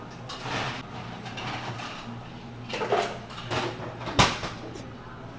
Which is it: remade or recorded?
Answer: recorded